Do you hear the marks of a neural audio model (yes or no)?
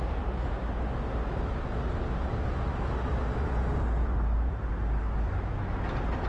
no